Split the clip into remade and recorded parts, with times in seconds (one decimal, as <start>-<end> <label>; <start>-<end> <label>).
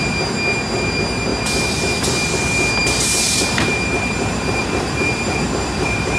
0.0-2.8 recorded; 2.8-6.2 remade